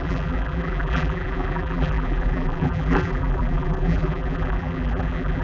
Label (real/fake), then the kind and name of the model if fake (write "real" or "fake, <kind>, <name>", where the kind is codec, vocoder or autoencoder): fake, vocoder, BigVGAN v2